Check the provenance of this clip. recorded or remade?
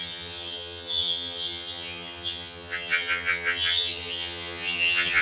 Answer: remade